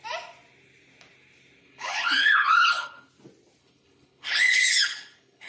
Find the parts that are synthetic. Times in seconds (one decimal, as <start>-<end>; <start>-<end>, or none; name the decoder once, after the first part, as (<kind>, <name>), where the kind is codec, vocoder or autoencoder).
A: 1.6-3.1 (codec, HILCodec); 3.6-5.5